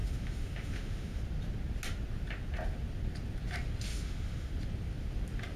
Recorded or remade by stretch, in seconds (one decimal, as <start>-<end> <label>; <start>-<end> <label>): 0.0-1.2 remade; 1.2-3.9 recorded; 3.9-4.5 remade; 4.5-5.6 recorded